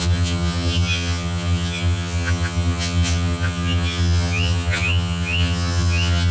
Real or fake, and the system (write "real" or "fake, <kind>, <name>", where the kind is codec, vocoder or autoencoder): fake, vocoder, HiFi-GAN